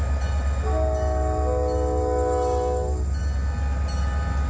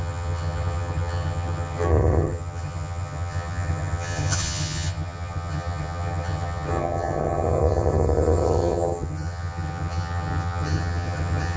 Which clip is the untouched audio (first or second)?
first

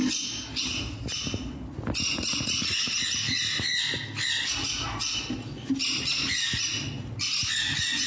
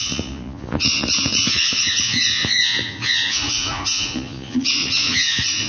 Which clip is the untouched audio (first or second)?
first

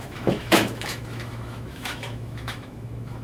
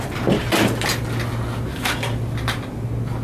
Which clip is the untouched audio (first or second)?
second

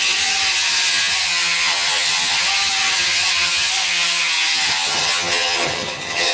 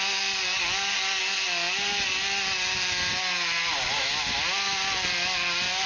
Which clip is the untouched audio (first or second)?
second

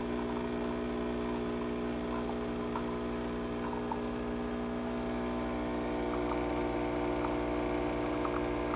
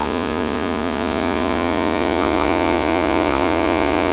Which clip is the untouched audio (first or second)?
first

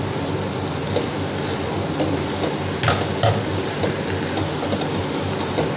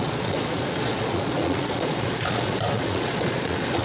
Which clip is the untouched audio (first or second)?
first